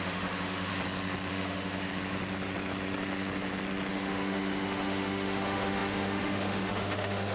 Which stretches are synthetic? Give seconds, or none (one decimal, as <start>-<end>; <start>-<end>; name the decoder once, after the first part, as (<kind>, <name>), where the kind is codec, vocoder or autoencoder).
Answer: 0.0-0.7 (autoencoder, DAC-VAE); 1.3-1.9; 3.9-7.3